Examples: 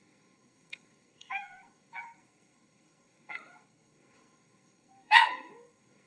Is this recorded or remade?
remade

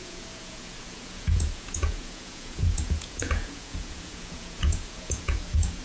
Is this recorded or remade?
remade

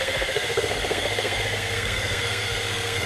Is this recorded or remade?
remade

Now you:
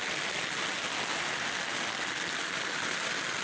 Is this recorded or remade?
recorded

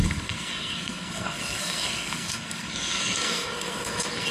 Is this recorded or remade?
remade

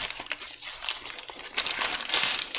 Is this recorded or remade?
recorded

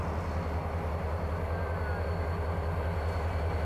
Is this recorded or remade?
recorded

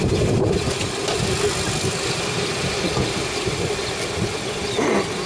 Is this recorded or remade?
recorded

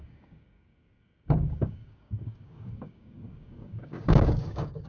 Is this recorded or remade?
remade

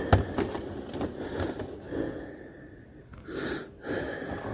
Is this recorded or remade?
recorded